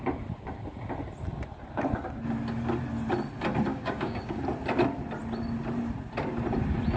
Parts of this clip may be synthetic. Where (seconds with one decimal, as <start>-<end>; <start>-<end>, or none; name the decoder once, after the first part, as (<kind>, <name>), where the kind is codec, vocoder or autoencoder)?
3.7-4.4 (codec, DAC)